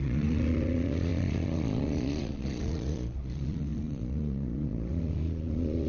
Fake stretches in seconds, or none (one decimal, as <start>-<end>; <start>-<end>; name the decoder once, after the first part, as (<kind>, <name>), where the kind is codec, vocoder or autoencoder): 0.0-5.9 (vocoder, Vocos)